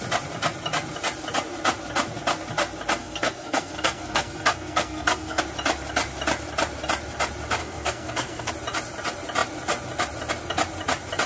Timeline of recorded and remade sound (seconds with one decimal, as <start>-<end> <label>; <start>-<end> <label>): 0.0-3.0 recorded; 3.0-5.4 remade; 5.4-7.6 recorded; 7.6-8.5 remade; 8.5-11.3 recorded